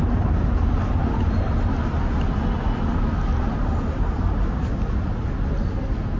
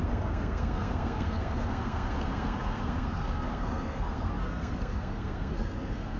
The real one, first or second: first